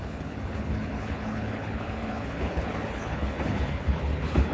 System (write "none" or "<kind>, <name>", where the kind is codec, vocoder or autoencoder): codec, HILCodec